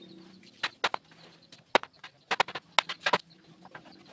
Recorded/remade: recorded